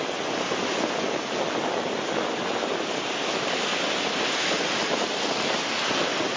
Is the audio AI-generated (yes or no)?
no